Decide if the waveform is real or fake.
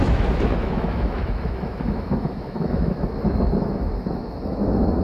fake